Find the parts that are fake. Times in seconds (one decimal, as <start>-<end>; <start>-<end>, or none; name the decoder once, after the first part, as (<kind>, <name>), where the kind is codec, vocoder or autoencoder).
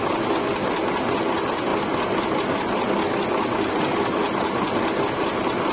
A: none